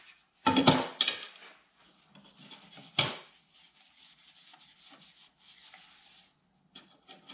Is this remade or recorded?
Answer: recorded